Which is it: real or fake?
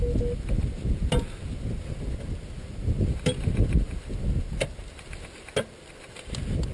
real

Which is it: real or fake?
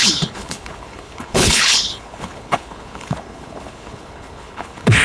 fake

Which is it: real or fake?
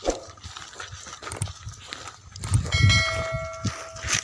real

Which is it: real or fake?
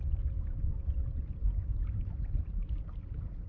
real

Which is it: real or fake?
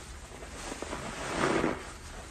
real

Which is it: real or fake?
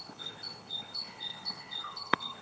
fake